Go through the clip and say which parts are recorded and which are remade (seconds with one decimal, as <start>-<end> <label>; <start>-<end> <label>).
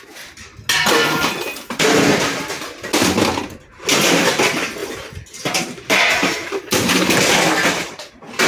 0.0-4.8 recorded; 4.8-7.0 remade; 7.0-7.8 recorded; 7.8-8.5 remade